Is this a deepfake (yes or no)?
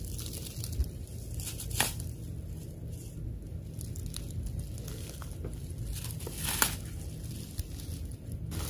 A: no